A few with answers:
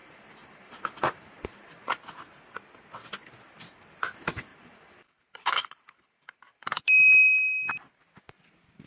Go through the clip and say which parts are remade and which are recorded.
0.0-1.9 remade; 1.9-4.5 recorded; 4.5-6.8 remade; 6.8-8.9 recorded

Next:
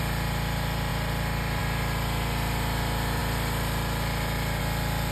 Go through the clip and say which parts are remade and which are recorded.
0.0-5.1 recorded

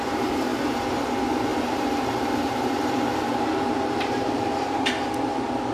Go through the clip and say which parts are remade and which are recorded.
0.0-0.5 recorded; 0.5-1.1 remade; 1.1-1.5 recorded; 1.5-4.9 remade; 4.9-5.7 recorded

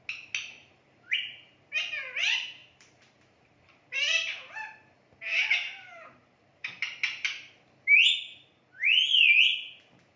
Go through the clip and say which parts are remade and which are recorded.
0.0-0.6 recorded; 0.6-1.7 remade; 1.7-2.6 recorded; 2.6-4.7 remade; 4.7-5.6 recorded; 5.6-6.7 remade; 6.7-10.2 recorded

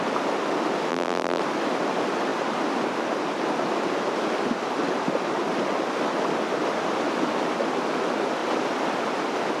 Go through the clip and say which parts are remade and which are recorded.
0.0-0.9 recorded; 0.9-1.4 remade; 1.4-9.6 recorded

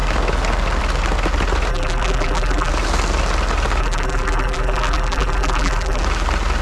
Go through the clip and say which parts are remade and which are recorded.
0.0-1.7 recorded; 1.7-2.7 remade; 2.7-3.8 recorded; 3.8-6.0 remade; 6.0-6.6 recorded